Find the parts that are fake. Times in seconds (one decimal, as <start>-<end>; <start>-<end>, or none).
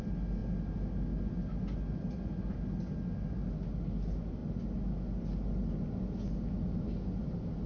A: none